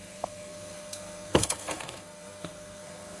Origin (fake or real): fake